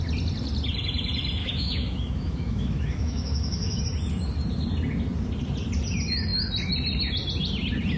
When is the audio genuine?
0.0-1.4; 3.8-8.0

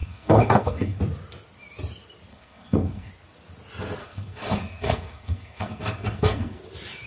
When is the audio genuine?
1.0-2.3; 3.1-4.0; 6.6-7.1

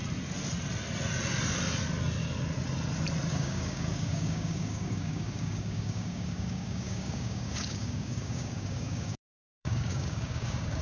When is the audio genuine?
0.0-3.3